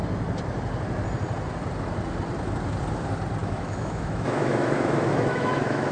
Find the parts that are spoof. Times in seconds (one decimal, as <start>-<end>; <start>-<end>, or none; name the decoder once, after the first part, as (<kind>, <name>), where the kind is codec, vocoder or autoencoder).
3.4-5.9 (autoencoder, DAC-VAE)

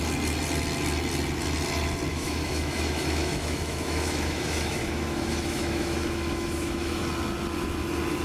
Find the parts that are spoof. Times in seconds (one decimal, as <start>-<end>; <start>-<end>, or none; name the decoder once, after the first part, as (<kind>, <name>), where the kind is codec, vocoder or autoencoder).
2.1-7.0 (autoencoder, DAC-VAE)

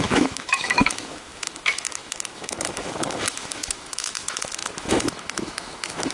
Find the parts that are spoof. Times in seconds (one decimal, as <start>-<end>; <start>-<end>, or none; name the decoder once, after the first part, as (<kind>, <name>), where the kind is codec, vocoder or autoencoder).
0.0-6.1 (autoencoder, DAC-VAE)

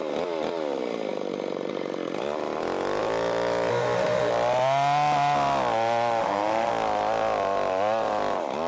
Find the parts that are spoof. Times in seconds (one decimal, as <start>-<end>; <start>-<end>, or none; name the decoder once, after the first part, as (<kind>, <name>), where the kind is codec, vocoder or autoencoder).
3.7-4.3 (autoencoder, DAC-VAE); 6.2-6.7

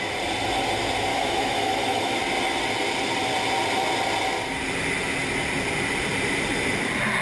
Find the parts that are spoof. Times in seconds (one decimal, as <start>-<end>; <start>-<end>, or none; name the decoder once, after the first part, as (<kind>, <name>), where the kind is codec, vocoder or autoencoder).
1.1-2.2 (autoencoder, DAC-VAE)

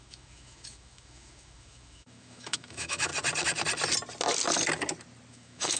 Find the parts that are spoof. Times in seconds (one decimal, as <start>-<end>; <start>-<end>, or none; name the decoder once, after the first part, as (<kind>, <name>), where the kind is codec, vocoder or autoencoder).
0.0-3.1 (autoencoder, DAC-VAE); 5.3-5.8